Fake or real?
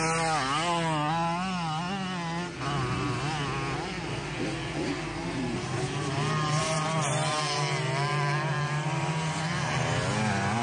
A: real